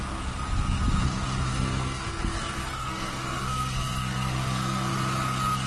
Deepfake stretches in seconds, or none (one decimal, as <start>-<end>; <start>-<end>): 1.5-4.9